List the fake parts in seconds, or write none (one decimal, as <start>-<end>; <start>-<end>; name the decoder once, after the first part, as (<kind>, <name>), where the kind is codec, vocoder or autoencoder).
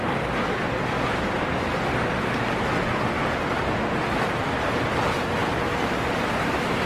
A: 3.2-3.7 (vocoder, BigVGAN v2)